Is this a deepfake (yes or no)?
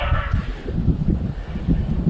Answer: no